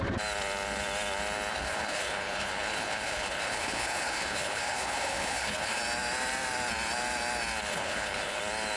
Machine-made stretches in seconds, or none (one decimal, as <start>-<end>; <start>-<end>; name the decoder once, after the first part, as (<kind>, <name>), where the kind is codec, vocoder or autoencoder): 1.5-5.8 (codec, HILCodec); 7.7-8.4